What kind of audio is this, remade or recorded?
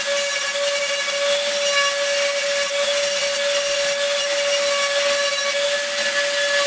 recorded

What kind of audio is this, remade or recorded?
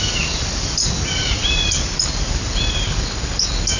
recorded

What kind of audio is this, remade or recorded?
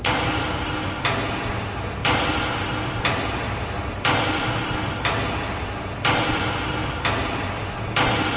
recorded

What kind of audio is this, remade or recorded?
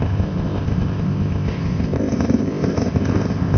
remade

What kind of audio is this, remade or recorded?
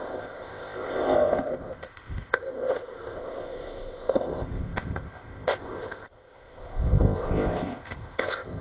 remade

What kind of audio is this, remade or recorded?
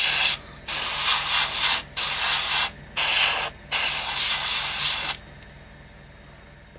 recorded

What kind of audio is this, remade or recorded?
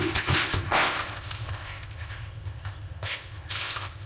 remade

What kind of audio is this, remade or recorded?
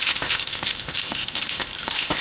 remade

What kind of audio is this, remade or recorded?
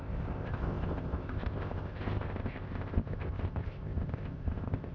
remade